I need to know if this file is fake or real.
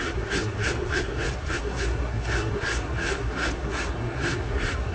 fake